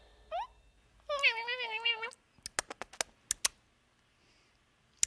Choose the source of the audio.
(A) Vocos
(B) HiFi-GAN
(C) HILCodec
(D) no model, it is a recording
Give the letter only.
D